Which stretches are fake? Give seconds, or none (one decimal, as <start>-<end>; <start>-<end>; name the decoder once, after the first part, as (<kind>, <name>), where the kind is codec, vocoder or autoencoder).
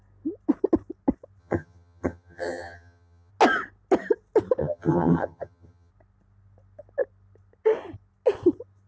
1.4-3.3 (vocoder, HiFi-GAN); 4.6-5.9